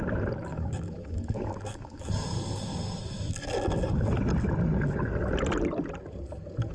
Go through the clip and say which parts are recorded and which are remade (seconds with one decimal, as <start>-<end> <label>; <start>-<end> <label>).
0.0-0.5 recorded; 0.5-2.1 remade; 2.1-6.7 recorded